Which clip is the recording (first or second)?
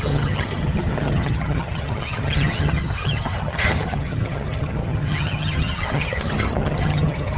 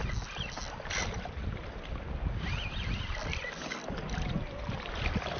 second